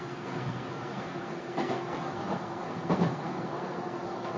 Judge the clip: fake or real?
fake